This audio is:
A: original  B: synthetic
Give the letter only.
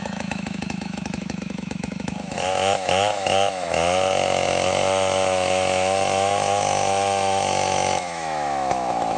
B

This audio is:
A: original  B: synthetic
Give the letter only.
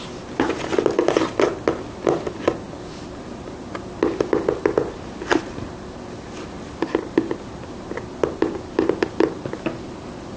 A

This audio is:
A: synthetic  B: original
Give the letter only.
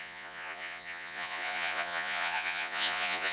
A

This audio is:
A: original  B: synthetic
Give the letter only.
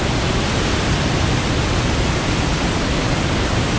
A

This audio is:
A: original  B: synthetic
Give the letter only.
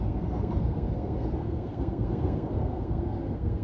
B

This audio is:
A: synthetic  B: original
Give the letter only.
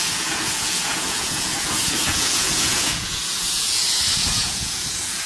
A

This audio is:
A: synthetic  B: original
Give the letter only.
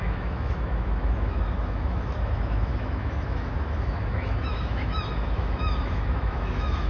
A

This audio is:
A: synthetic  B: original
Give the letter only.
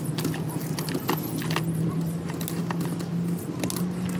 B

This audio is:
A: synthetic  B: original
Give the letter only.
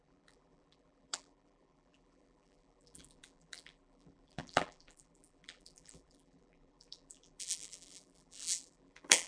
A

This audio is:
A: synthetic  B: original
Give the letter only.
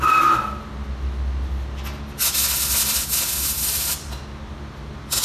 B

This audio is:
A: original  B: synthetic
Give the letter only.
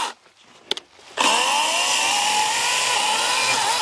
A